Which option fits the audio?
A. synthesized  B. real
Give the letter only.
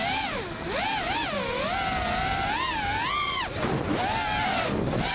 B